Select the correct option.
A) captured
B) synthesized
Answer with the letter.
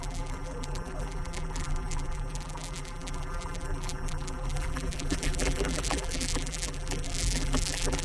B